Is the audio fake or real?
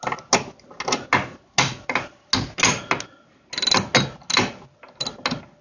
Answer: real